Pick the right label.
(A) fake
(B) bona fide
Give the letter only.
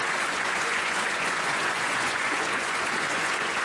A